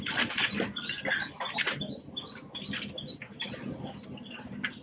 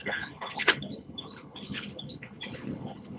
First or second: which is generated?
second